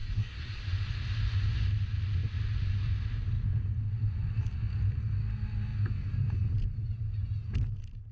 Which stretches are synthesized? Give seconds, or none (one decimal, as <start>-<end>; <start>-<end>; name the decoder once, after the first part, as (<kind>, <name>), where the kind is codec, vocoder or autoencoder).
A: 0.0-0.6 (codec, SNAC)